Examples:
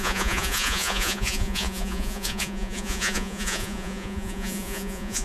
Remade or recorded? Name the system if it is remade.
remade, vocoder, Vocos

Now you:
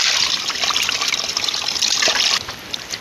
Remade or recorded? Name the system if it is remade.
remade, vocoder, BigVGAN v2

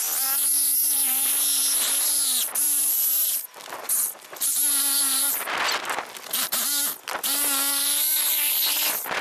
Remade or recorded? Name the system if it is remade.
recorded